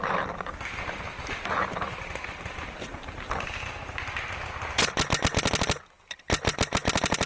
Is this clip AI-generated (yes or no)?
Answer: no